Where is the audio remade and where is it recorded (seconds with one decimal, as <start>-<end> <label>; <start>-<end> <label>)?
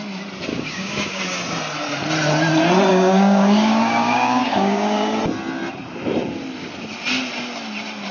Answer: 0.0-0.5 recorded; 0.5-1.2 remade; 1.2-2.9 recorded; 2.9-5.2 remade; 5.2-8.1 recorded